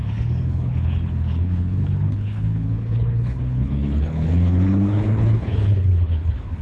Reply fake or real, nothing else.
fake